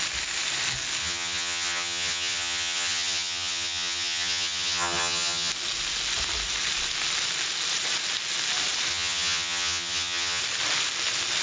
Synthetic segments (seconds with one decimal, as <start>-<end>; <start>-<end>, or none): 1.0-5.5; 8.9-10.4